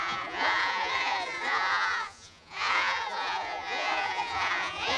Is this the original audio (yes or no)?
no